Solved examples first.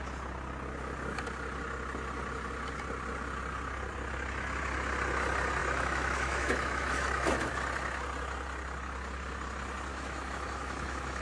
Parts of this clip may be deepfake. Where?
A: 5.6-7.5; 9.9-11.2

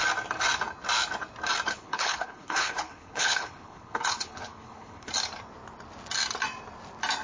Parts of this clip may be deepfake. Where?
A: 1.7-5.1